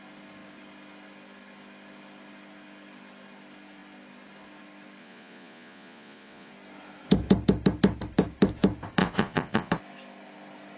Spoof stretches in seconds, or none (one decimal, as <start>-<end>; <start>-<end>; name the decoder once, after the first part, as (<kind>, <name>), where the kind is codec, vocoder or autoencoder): 5.0-6.5 (vocoder, Vocos); 9.0-9.7